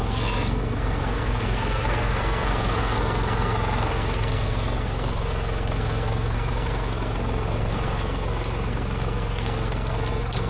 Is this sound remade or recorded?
remade